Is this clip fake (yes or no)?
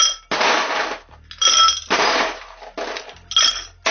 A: no